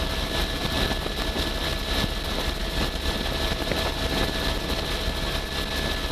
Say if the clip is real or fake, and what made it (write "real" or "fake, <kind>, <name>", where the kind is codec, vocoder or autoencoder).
real